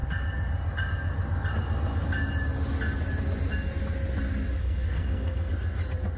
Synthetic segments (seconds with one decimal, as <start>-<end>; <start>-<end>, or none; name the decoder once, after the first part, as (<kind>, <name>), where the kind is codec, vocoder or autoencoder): 4.6-5.5 (codec, SNAC)